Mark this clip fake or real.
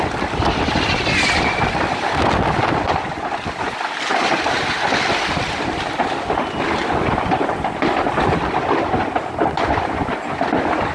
real